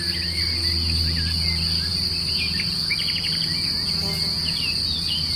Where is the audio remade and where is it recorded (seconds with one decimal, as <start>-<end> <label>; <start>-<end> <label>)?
0.0-5.4 recorded